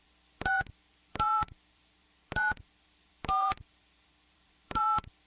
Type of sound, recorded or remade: remade